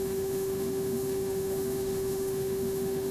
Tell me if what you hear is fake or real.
fake